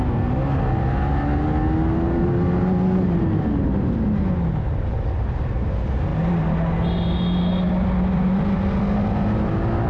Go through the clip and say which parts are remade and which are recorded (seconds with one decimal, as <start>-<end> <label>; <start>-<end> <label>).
0.0-9.9 recorded